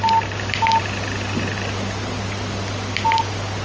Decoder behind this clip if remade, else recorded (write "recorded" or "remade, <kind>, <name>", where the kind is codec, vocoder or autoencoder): recorded